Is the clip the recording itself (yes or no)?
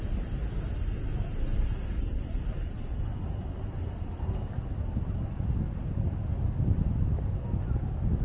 yes